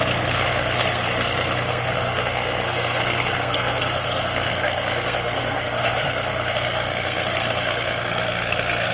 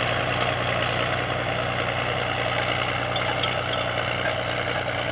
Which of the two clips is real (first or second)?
second